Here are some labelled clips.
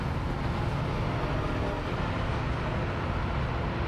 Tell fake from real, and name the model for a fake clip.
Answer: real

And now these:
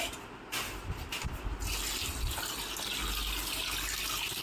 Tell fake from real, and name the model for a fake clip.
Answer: real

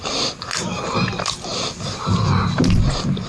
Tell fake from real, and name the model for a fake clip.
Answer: real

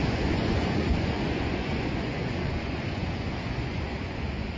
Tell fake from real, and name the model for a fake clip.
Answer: fake, vocoder, Vocos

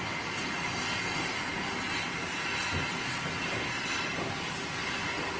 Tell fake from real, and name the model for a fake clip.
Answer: real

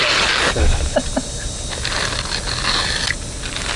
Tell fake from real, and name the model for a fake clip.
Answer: real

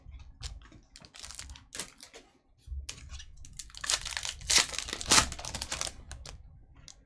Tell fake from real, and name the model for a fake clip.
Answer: real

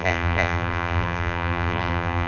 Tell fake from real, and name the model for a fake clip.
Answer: fake, vocoder, BigVGAN v2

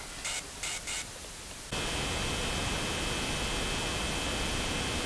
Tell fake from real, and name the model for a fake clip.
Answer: real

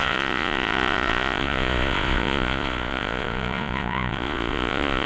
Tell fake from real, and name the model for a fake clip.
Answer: fake, vocoder, Vocos